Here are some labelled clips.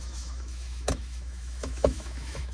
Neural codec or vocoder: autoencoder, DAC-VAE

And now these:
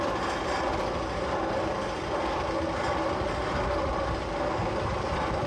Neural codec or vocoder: none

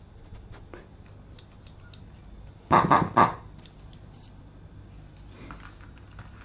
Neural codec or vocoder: none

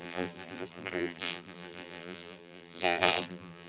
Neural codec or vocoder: vocoder, BigVGAN v2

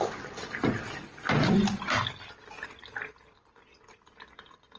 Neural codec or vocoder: none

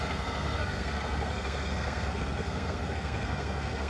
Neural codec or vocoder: codec, SNAC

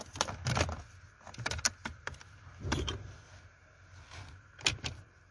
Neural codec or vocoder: none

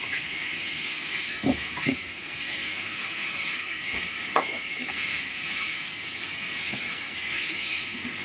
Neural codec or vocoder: codec, SNAC